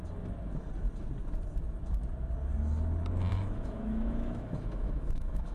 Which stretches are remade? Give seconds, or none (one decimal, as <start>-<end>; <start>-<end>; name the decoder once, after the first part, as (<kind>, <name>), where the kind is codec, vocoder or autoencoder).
3.3-5.5 (autoencoder, DAC-VAE)

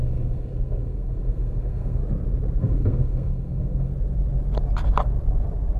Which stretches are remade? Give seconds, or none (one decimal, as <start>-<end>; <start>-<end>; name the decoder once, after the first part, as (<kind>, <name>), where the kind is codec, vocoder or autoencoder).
0.0-2.0 (codec, SNAC); 2.6-3.9

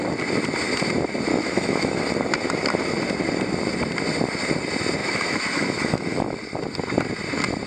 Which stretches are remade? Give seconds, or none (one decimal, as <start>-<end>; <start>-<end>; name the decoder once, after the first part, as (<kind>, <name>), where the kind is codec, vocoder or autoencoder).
1.3-2.0 (autoencoder, DAC-VAE); 5.0-6.4

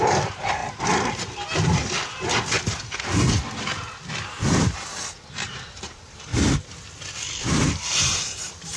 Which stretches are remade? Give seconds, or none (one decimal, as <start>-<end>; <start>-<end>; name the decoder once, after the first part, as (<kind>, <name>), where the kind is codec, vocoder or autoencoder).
0.0-0.6 (vocoder, BigVGAN v2); 4.4-4.9; 5.5-6.3; 7.4-8.8

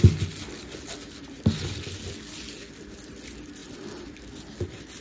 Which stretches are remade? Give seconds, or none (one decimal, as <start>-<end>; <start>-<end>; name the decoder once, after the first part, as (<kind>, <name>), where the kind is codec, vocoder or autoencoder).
none

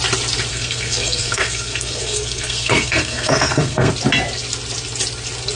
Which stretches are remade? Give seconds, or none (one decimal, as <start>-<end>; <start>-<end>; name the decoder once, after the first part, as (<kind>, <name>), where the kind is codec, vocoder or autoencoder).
0.5-3.9 (codec, SNAC)

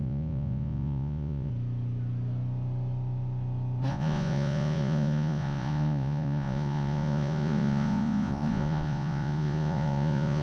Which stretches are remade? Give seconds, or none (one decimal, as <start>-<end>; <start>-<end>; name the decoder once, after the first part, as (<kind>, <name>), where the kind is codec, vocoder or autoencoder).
0.0-1.5 (vocoder, Vocos); 3.9-10.4